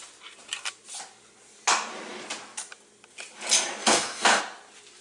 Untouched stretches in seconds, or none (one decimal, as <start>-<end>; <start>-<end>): 0.0-3.8; 4.4-5.0